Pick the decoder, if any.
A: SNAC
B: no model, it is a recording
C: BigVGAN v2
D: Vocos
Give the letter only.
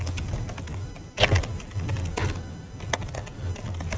B